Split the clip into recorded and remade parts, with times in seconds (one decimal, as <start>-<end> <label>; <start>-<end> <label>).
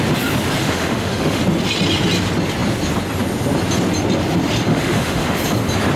0.0-0.6 recorded; 0.6-1.4 remade; 1.4-4.7 recorded; 4.7-5.4 remade; 5.4-6.0 recorded